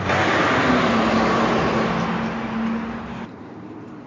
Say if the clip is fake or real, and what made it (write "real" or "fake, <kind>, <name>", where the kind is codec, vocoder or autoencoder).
real